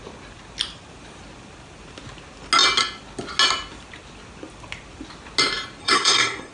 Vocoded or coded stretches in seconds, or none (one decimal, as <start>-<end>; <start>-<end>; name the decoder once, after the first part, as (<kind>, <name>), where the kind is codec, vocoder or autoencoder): 5.8-6.5 (codec, SNAC)